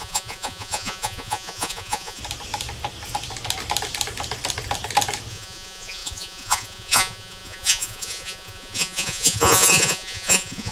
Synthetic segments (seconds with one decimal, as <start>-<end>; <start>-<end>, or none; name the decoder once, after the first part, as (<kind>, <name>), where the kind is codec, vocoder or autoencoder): 0.0-2.2 (vocoder, Vocos); 5.3-10.7